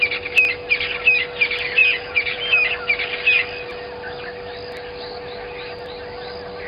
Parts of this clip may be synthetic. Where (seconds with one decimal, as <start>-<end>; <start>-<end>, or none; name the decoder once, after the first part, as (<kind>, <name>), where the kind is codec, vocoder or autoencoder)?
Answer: 1.8-2.4 (vocoder, Vocos)